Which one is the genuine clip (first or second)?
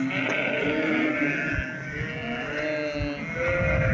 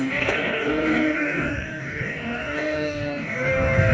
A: first